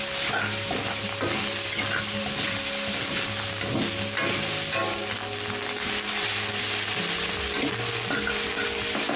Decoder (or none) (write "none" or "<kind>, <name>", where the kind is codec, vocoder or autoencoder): none